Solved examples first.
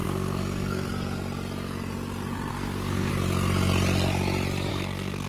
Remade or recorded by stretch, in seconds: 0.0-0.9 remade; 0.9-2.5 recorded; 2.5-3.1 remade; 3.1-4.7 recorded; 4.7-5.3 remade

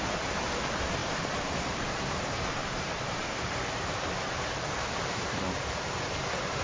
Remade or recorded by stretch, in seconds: 0.0-1.0 recorded; 1.0-2.2 remade; 2.2-2.6 recorded; 2.6-6.6 remade

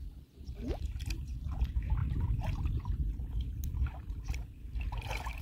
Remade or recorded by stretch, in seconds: 0.0-2.0 recorded; 2.0-5.4 remade

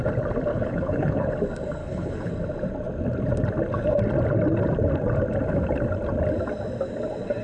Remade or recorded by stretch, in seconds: 0.0-0.5 recorded; 0.5-1.3 remade; 1.3-1.8 recorded; 1.8-2.3 remade; 2.3-7.4 recorded

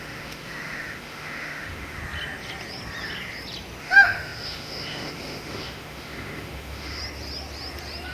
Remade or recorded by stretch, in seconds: 0.0-2.0 remade; 2.0-3.8 recorded; 3.8-7.0 remade; 7.0-8.1 recorded